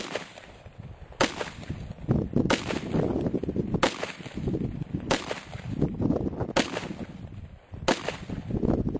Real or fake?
real